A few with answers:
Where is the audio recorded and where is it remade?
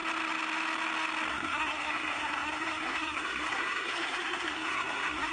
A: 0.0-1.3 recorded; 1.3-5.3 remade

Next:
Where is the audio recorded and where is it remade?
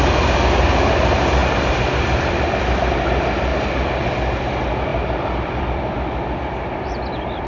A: 0.0-1.4 recorded; 1.4-2.8 remade; 2.8-3.5 recorded; 3.5-4.1 remade; 4.1-4.9 recorded; 4.9-5.9 remade; 5.9-7.5 recorded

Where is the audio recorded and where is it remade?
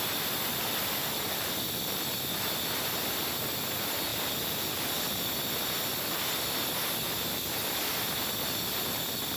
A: 0.0-1.0 recorded; 1.0-2.0 remade; 2.0-9.4 recorded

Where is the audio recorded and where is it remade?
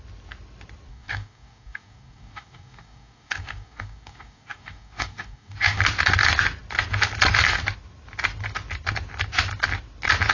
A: 0.0-0.9 recorded; 0.9-5.8 remade; 5.8-10.3 recorded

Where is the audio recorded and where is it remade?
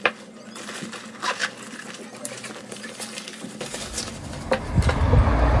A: 0.0-5.6 recorded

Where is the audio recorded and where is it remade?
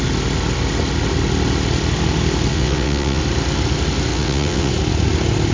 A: 0.0-2.5 recorded; 2.5-3.2 remade; 3.2-4.1 recorded; 4.1-4.7 remade; 4.7-5.5 recorded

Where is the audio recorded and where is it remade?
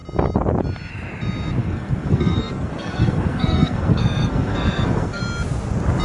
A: 0.0-1.6 recorded; 1.6-5.2 remade; 5.2-6.0 recorded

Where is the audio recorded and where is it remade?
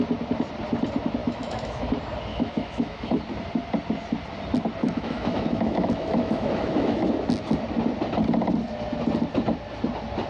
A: 0.0-1.2 recorded; 1.2-1.9 remade; 1.9-2.3 recorded; 2.3-3.2 remade; 3.2-4.8 recorded; 4.8-7.1 remade; 7.1-10.3 recorded